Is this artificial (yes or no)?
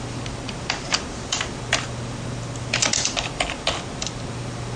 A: no